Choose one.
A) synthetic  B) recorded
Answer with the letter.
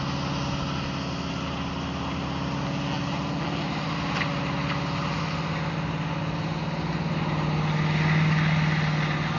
B